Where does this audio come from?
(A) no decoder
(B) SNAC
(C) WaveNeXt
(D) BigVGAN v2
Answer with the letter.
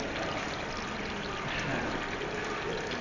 A